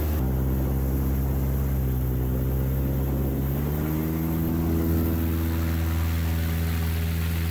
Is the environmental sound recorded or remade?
recorded